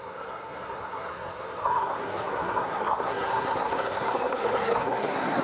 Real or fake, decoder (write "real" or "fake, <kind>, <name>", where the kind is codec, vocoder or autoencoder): fake, codec, SNAC